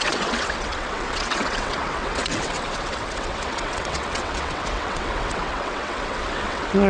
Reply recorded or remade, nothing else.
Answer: remade